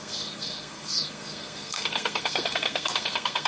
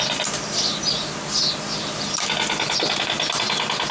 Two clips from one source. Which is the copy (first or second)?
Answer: first